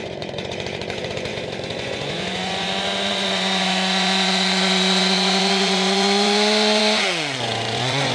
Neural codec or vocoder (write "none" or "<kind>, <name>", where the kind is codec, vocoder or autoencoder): vocoder, Vocos